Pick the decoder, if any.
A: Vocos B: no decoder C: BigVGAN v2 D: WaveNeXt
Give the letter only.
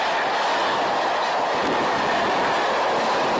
B